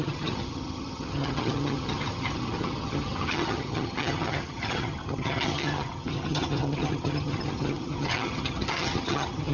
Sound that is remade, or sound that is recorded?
remade